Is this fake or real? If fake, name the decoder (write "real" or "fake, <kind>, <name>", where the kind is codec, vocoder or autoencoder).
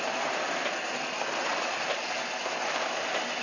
real